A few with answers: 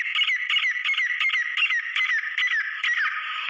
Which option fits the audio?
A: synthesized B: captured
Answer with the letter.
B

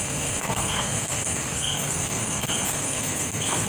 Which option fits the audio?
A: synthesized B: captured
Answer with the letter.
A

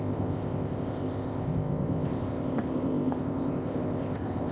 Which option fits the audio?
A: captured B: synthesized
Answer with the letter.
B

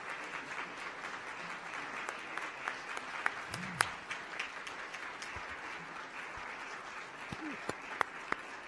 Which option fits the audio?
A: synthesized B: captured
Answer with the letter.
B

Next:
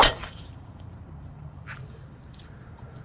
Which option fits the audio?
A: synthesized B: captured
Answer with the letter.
A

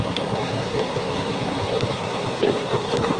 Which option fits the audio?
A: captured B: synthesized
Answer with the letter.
B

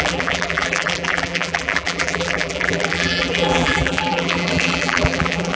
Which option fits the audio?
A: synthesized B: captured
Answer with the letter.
A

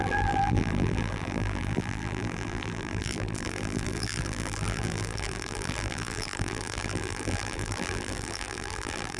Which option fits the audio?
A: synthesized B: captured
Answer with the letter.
A